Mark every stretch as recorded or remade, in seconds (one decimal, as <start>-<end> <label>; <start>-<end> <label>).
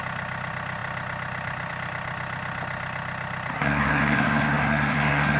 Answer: 0.0-3.5 recorded; 3.5-5.4 remade